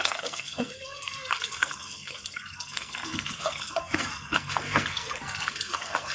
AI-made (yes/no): yes